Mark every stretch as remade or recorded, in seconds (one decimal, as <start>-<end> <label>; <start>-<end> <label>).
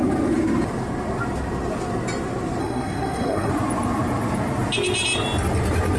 0.0-2.6 recorded; 2.6-3.5 remade; 3.5-6.0 recorded